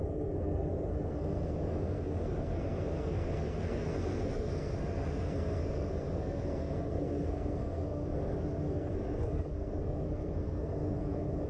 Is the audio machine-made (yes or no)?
yes